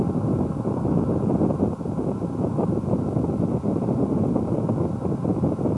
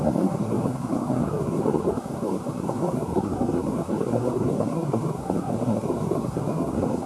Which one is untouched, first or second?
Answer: first